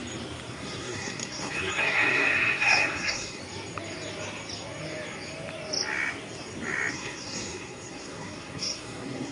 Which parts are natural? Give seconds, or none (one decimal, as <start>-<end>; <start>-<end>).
0.0-0.5; 3.4-6.9